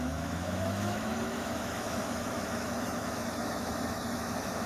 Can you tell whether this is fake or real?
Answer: fake